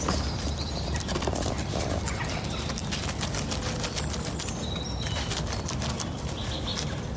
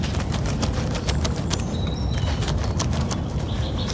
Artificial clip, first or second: second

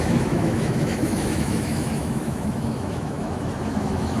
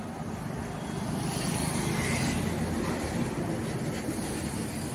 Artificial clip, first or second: first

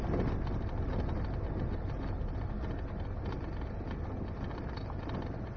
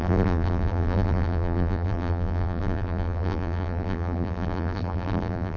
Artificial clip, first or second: second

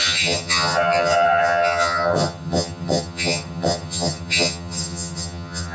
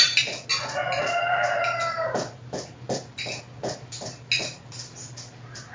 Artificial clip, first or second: first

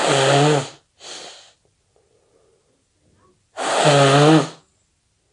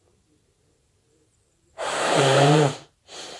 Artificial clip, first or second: second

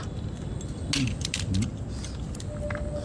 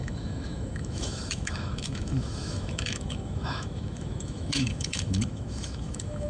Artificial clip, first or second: second